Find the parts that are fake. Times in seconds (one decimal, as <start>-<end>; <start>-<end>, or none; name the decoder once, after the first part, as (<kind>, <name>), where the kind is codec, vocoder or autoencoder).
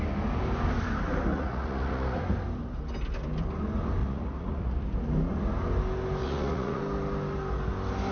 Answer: 1.3-2.2 (vocoder, Vocos); 4.0-4.7; 6.2-6.8